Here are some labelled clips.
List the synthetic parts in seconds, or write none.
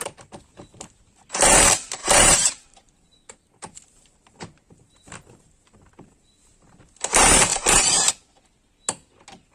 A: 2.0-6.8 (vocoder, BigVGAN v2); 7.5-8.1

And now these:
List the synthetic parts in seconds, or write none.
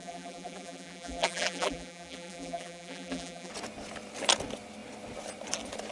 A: 0.0-3.5 (vocoder, BigVGAN v2)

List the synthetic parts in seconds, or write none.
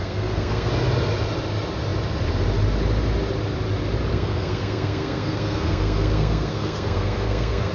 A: 0.0-0.7 (codec, SNAC); 4.1-7.7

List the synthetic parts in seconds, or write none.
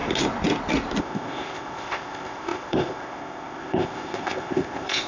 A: 1.0-5.1 (codec, ZipCodec)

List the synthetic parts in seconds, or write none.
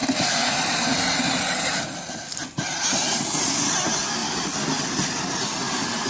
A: none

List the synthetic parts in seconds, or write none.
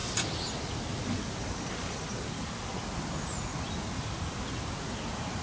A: 3.1-3.5 (vocoder, Vocos); 4.8-5.4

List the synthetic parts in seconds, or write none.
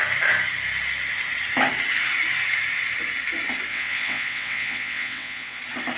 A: 3.7-5.6 (vocoder, WaveNeXt)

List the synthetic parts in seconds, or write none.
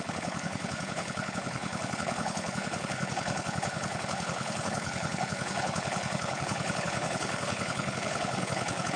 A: 0.0-9.0 (codec, HILCodec)